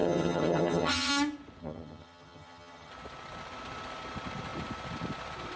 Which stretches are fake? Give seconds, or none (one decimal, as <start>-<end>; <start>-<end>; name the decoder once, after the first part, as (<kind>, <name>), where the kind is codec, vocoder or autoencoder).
0.0-1.1 (vocoder, HiFi-GAN); 1.6-2.9